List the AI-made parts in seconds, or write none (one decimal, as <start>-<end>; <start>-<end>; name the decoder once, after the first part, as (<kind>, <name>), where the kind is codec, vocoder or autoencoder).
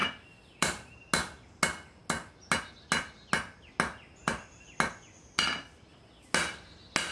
0.0-1.1 (vocoder, BigVGAN v2)